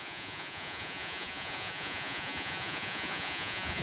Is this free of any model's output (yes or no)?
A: no